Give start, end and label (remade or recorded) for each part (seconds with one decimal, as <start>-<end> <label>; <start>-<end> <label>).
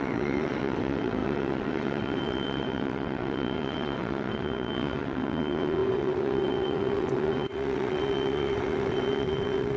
0.0-9.8 remade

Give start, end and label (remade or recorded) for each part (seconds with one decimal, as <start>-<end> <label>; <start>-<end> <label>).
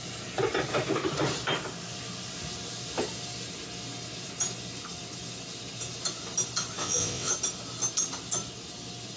0.0-6.8 recorded; 6.8-7.3 remade; 7.3-9.2 recorded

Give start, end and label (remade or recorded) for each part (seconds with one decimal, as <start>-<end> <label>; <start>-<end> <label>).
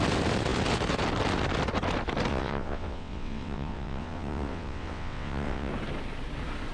0.0-2.3 recorded; 2.3-5.7 remade; 5.7-6.7 recorded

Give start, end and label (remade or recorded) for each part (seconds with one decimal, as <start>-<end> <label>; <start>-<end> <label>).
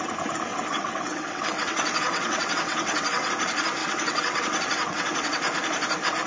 0.0-0.5 recorded; 0.5-3.3 remade; 3.3-3.8 recorded; 3.8-5.4 remade; 5.4-6.3 recorded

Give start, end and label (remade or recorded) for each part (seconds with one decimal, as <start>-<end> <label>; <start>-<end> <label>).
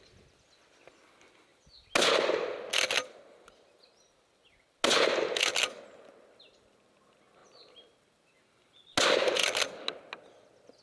0.0-10.8 recorded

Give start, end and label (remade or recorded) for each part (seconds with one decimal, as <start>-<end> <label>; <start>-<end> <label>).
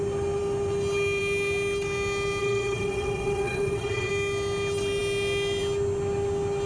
0.0-2.4 recorded; 2.4-4.1 remade; 4.1-6.7 recorded